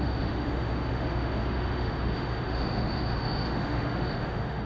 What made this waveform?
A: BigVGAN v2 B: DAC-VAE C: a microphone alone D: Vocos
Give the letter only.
B